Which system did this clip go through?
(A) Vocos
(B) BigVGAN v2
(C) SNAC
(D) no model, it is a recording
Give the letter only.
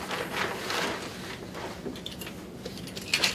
D